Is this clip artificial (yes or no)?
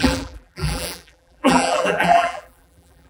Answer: yes